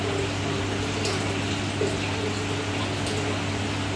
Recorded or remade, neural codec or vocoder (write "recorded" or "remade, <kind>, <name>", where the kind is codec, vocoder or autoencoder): recorded